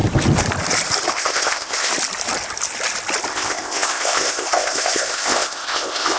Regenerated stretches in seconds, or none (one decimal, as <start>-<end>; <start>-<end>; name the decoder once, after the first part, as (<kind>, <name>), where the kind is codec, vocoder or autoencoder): 1.1-1.9 (codec, ZipCodec); 3.3-6.2